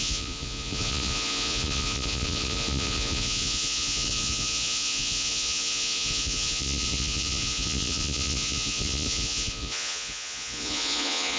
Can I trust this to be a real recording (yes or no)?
no